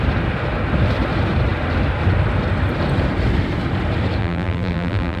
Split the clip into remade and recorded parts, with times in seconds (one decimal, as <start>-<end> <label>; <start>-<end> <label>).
0.0-4.2 recorded; 4.2-5.2 remade